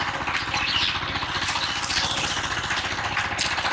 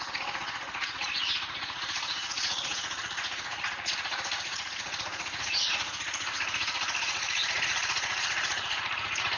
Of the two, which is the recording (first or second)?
first